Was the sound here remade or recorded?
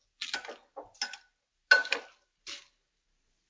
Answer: recorded